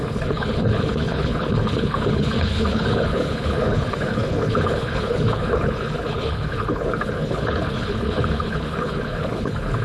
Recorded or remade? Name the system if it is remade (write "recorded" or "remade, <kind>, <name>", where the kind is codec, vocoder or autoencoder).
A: remade, codec, HILCodec